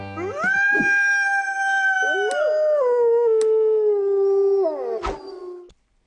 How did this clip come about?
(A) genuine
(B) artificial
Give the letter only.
A